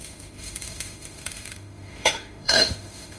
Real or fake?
fake